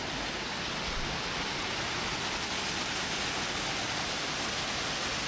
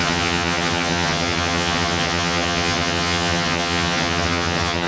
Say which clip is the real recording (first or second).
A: first